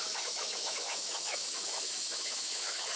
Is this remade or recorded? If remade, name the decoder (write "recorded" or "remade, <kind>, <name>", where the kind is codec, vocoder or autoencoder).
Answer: remade, autoencoder, DAC-VAE